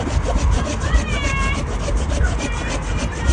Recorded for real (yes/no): yes